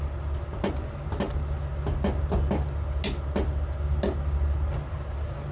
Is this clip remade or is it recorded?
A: recorded